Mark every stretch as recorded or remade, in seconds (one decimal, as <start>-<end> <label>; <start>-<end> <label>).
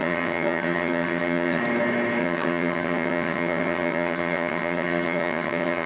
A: 0.0-1.6 remade; 1.6-2.2 recorded; 2.2-5.9 remade